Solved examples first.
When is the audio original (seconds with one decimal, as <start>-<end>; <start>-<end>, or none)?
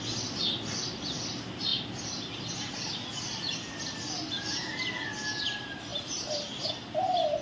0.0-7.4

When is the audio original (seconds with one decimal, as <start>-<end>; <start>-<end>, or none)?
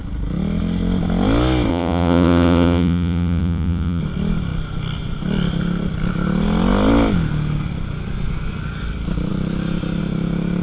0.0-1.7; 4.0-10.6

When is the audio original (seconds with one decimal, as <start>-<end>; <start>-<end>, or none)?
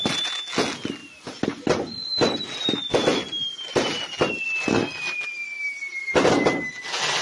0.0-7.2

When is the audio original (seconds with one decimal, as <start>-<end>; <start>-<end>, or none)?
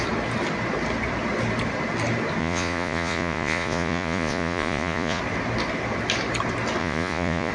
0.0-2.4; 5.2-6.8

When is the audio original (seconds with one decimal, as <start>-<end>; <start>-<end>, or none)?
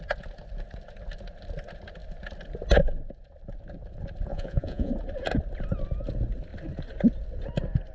0.0-4.3; 4.9-7.9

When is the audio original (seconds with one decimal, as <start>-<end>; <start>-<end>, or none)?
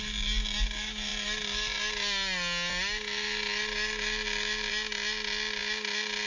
0.0-6.3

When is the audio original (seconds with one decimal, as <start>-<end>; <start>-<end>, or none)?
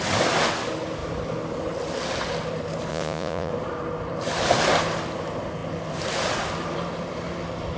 0.0-2.9; 3.5-7.8